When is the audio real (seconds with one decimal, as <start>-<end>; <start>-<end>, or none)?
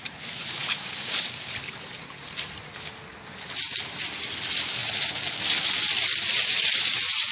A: 0.0-7.3